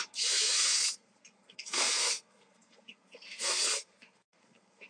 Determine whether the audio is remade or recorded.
remade